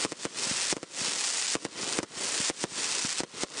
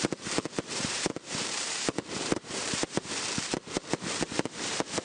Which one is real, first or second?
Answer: first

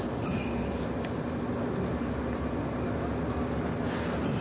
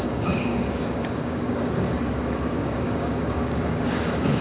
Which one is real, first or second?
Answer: first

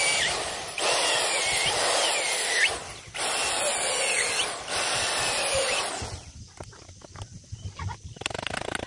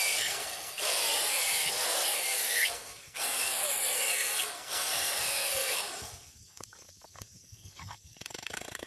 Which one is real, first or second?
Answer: first